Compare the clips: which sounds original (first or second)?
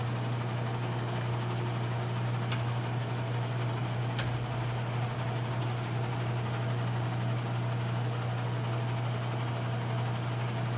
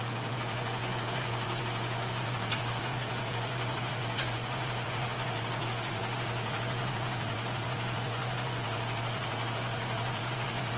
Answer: first